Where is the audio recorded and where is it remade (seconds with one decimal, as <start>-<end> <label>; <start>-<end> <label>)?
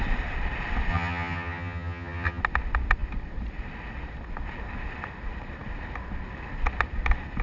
0.0-0.9 recorded; 0.9-2.4 remade; 2.4-7.4 recorded